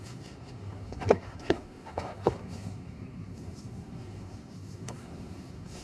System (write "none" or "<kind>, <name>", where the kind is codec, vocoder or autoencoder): codec, SNAC